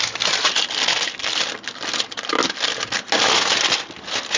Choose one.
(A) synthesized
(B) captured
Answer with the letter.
B